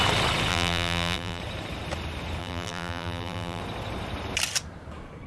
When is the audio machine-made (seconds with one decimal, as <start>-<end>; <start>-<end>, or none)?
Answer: 0.5-1.4; 2.4-3.6